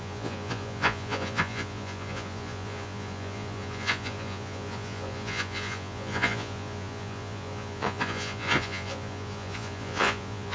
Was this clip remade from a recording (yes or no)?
yes